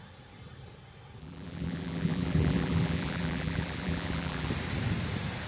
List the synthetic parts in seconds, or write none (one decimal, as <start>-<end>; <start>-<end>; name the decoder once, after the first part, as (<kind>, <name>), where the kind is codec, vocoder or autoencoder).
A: 1.2-4.5 (vocoder, BigVGAN v2)